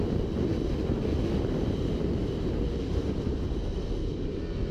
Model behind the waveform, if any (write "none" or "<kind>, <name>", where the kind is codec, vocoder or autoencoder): none